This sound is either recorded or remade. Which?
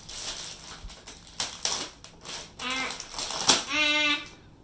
recorded